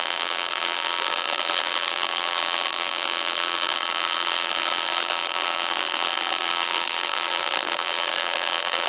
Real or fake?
fake